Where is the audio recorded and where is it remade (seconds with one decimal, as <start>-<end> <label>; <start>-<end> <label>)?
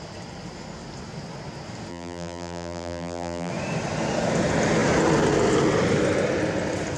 0.0-1.9 recorded; 1.9-3.5 remade; 3.5-7.0 recorded